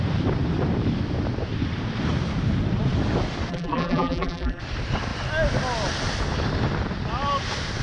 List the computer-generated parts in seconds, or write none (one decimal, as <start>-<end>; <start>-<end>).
3.5-4.6